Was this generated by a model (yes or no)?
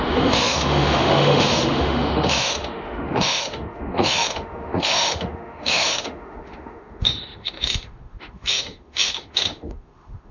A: yes